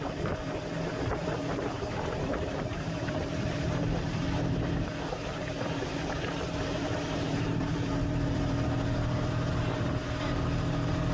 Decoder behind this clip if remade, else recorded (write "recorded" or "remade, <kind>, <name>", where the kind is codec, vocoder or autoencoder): remade, vocoder, BigVGAN v2